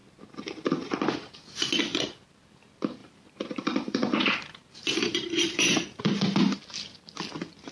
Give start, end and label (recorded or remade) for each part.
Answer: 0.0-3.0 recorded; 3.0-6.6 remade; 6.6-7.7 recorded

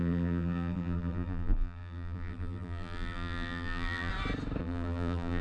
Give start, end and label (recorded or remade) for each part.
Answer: 0.0-4.1 remade; 4.1-4.6 recorded; 4.6-5.4 remade

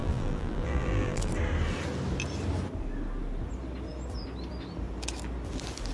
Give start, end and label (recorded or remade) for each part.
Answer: 0.0-1.3 remade; 1.3-5.9 recorded

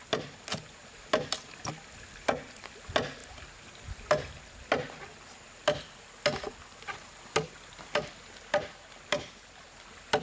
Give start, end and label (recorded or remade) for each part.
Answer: 0.0-10.2 recorded

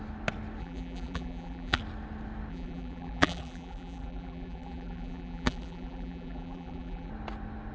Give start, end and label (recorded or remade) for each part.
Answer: 0.0-0.6 recorded; 0.6-1.8 remade; 1.8-2.5 recorded; 2.5-7.1 remade; 7.1-7.7 recorded

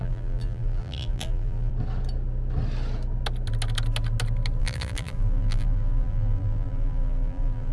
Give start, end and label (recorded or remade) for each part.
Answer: 0.0-1.7 remade; 1.7-4.6 recorded; 4.6-7.7 remade